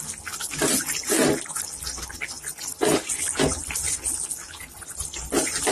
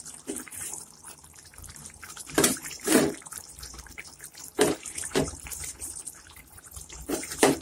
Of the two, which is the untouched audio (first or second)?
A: first